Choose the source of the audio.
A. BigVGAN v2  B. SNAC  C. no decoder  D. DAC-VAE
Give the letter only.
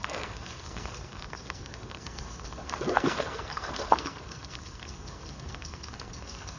B